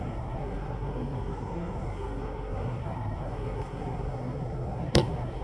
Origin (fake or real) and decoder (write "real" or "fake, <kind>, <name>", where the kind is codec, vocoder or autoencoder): fake, codec, SNAC